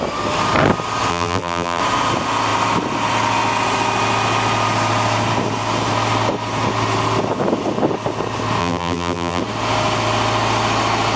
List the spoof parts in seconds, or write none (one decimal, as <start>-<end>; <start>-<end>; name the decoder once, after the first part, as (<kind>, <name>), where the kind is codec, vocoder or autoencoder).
1.1-1.8 (vocoder, BigVGAN v2); 8.6-9.4